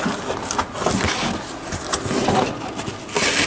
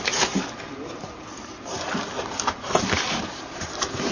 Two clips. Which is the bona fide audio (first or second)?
first